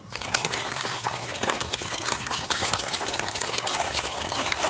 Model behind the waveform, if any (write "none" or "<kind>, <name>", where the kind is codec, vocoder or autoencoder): codec, SNAC